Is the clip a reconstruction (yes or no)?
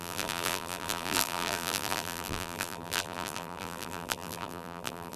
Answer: yes